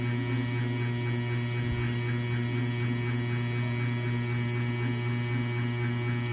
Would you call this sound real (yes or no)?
yes